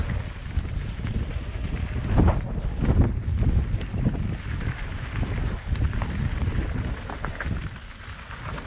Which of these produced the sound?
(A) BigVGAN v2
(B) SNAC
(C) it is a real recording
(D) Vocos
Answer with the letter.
C